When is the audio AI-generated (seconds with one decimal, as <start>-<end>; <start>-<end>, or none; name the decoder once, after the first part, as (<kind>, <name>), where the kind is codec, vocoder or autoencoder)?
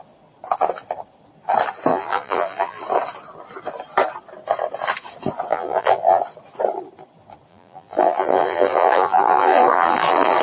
1.9-2.8 (vocoder, BigVGAN v2); 5.5-6.2; 7.5-10.4